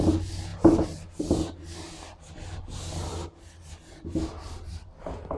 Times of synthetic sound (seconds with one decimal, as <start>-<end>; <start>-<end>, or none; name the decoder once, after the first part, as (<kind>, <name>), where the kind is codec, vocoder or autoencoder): none